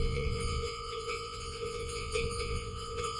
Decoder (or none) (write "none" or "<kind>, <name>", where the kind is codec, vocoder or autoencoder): vocoder, Vocos